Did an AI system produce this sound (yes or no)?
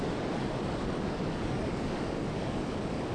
yes